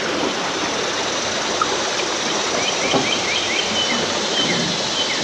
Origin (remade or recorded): recorded